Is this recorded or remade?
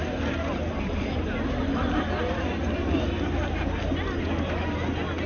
recorded